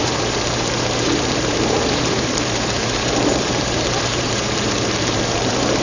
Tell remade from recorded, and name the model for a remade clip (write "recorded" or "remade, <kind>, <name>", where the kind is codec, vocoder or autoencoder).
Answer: remade, vocoder, BigVGAN v2